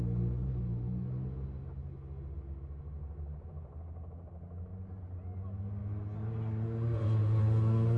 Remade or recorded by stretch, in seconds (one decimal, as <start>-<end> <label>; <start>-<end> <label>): 0.0-8.0 recorded